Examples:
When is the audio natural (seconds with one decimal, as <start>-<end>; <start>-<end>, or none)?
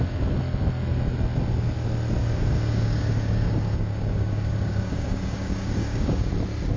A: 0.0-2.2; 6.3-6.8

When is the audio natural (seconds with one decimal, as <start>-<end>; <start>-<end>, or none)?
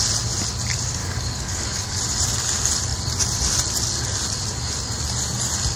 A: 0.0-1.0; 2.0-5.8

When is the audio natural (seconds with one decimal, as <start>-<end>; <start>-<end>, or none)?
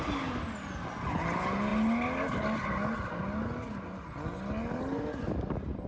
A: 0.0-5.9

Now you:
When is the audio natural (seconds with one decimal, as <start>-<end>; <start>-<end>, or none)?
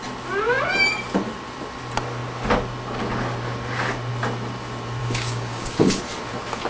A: 0.0-5.0; 6.0-6.7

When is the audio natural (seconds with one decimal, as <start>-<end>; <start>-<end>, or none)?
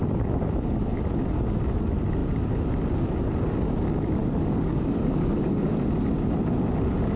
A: 0.0-4.2; 5.8-7.2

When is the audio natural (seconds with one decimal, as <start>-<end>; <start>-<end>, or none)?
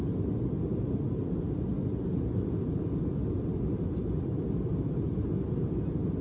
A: 0.0-6.2